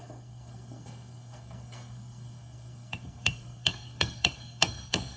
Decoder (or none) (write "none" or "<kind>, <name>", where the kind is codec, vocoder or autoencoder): codec, SNAC